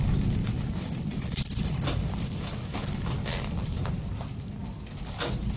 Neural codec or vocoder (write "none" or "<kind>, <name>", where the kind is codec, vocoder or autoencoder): none